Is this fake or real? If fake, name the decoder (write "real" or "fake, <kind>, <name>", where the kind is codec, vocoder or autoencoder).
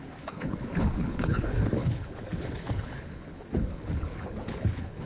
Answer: fake, codec, HILCodec